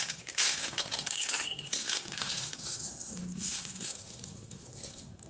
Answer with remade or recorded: remade